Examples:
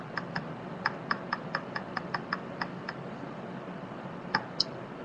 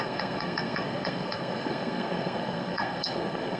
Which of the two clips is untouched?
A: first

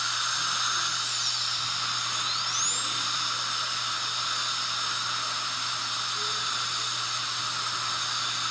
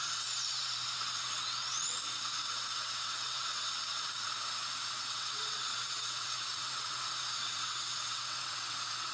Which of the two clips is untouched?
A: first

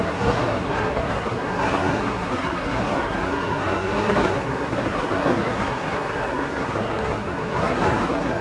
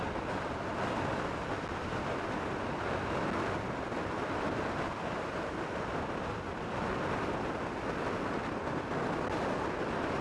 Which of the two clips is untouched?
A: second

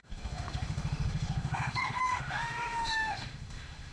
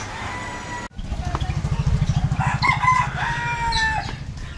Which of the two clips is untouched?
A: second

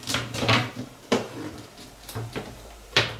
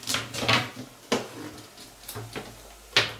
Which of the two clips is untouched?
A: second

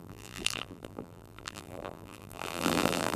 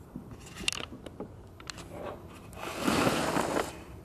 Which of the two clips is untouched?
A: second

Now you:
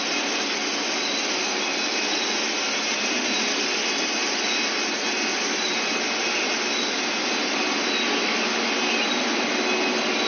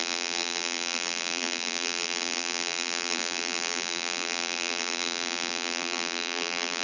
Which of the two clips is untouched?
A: first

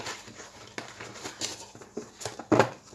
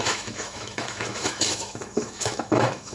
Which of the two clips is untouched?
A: first